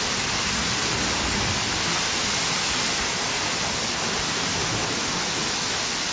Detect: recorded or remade recorded